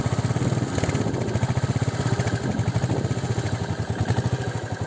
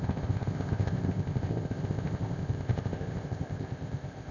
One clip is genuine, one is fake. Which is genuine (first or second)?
first